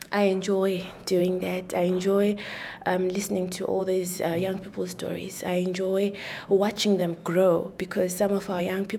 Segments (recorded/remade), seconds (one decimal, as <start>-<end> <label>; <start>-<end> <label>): 0.0-1.2 remade; 1.2-3.8 recorded; 3.8-9.0 remade